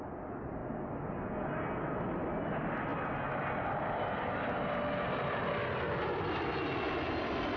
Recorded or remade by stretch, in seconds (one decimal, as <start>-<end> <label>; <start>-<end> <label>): 0.0-7.6 recorded